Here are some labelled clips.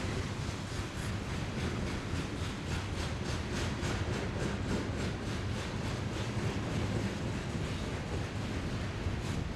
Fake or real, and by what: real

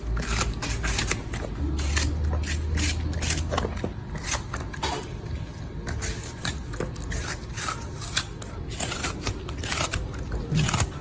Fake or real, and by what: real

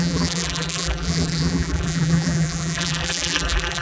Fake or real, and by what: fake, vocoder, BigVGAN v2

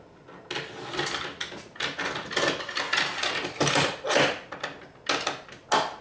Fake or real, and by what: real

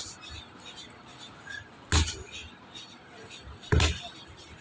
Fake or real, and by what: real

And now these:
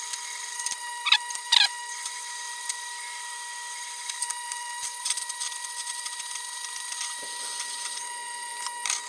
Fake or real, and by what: fake, vocoder, BigVGAN v2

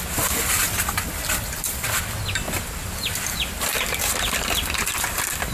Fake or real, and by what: fake, vocoder, BigVGAN v2